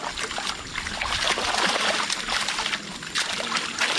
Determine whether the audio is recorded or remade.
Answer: recorded